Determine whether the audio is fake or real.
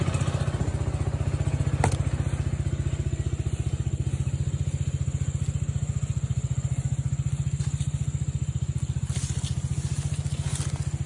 real